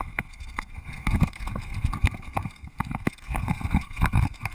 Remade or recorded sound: remade